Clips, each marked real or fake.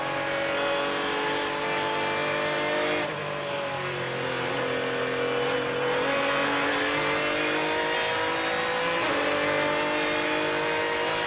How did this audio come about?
real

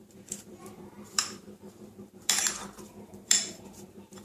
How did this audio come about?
fake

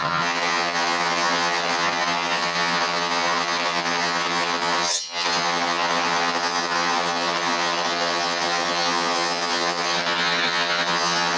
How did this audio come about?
fake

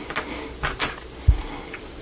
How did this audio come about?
real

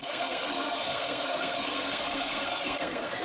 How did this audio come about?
fake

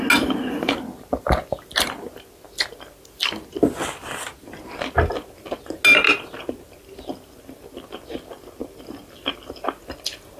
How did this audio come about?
real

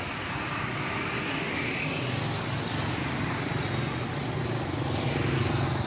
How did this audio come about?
real